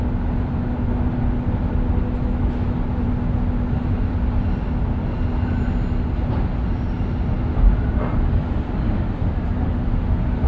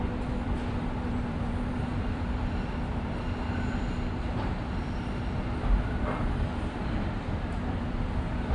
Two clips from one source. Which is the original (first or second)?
first